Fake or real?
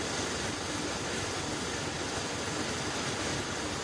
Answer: real